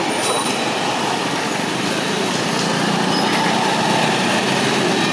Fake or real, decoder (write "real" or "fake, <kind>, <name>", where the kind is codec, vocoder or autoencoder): fake, vocoder, BigVGAN v2